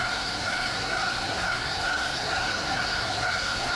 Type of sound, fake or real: fake